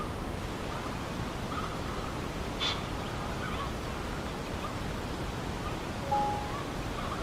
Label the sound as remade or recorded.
recorded